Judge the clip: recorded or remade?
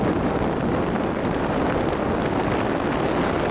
recorded